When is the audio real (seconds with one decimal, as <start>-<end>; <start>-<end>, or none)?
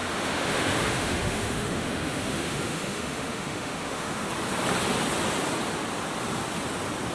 4.3-7.1